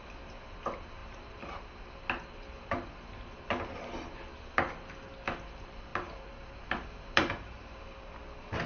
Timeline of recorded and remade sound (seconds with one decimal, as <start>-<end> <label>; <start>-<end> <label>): 0.0-1.0 recorded; 1.0-1.6 remade; 1.6-5.9 recorded; 5.9-7.8 remade; 7.8-8.7 recorded

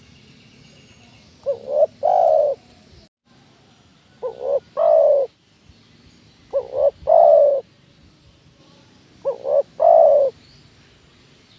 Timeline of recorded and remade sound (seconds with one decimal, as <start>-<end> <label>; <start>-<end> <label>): 0.0-3.9 recorded; 3.9-4.6 remade; 4.6-7.5 recorded; 7.5-8.6 remade; 8.6-11.6 recorded

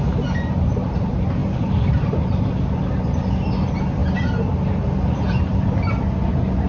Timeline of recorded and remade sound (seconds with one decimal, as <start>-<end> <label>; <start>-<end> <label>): 0.0-1.4 recorded; 1.4-2.4 remade; 2.4-4.0 recorded; 4.0-4.5 remade; 4.5-6.7 recorded

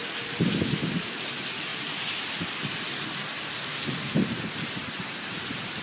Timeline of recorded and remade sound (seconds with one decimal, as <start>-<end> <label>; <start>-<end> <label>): 0.0-0.5 recorded; 0.5-1.7 remade; 1.7-3.7 recorded; 3.7-5.8 remade

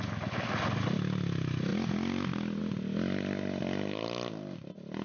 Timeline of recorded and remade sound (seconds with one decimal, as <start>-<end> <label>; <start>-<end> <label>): 0.0-5.0 recorded

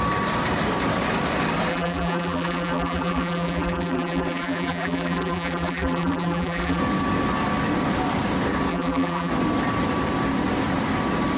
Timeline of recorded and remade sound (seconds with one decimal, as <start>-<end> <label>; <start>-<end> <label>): 0.0-1.7 recorded; 1.7-6.8 remade; 6.8-8.7 recorded; 8.7-9.3 remade; 9.3-11.4 recorded

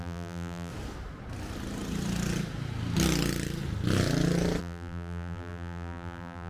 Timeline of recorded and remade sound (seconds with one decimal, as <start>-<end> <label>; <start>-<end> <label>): 0.0-0.7 remade; 0.7-4.6 recorded; 4.6-6.5 remade